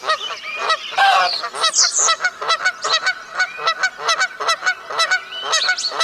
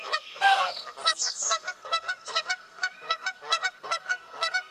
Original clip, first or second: first